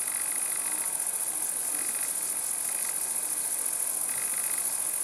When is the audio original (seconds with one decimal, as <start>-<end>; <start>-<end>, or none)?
0.0-5.0